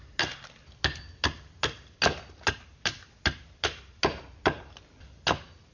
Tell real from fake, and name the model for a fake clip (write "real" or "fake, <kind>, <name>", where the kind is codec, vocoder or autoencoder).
real